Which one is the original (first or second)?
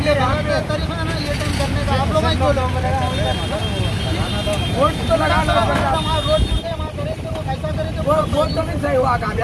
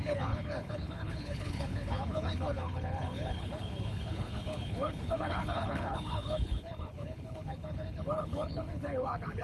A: first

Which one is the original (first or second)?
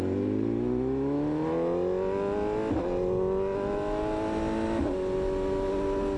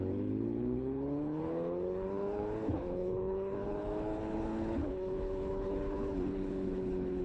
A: first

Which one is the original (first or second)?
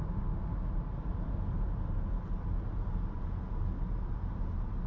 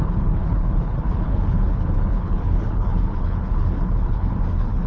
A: first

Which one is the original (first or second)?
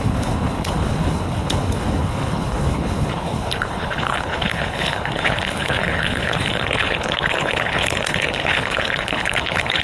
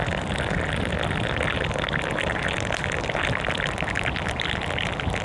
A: second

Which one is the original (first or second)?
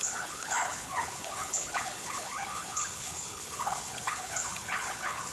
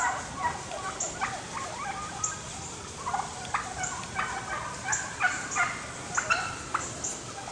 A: second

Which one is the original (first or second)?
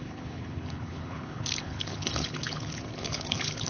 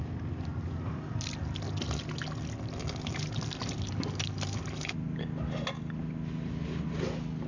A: second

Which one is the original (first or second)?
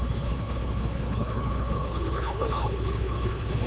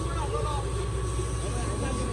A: second